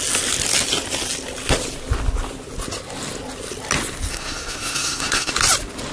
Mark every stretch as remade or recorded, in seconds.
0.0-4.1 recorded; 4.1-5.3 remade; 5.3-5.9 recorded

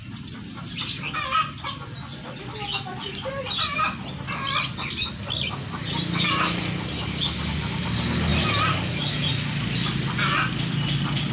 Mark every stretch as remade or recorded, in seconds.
0.0-11.3 recorded

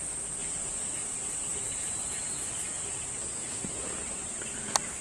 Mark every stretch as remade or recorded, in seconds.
0.0-0.4 recorded; 0.4-2.6 remade; 2.6-5.0 recorded